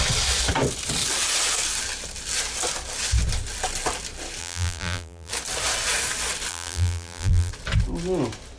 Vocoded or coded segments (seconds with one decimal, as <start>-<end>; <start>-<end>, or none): 4.4-5.3; 6.5-7.5